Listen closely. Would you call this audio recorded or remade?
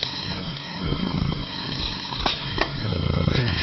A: remade